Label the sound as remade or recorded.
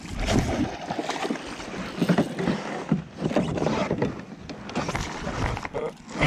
recorded